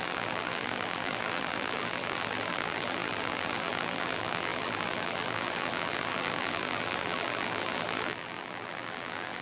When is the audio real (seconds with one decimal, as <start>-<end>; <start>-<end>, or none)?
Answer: none